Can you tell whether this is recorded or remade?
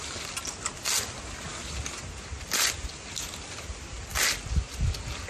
recorded